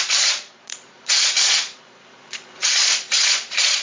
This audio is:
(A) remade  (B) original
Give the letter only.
A